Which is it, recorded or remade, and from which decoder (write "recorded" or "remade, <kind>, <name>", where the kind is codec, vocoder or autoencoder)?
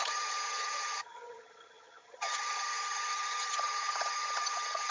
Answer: remade, vocoder, HiFi-GAN